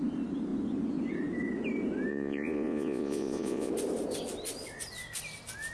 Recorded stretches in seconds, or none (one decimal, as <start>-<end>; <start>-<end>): 0.0-2.1; 3.7-5.7